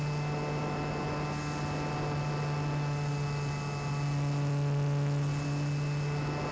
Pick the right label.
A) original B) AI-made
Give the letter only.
A